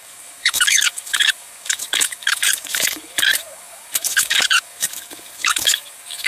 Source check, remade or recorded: remade